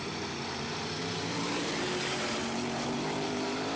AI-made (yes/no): yes